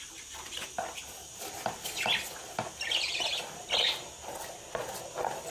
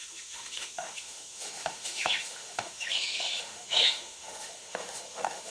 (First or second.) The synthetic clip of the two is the second